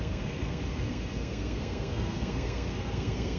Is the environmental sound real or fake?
fake